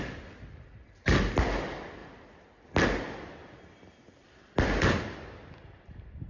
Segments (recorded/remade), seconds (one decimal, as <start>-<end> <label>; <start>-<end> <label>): 0.0-6.3 recorded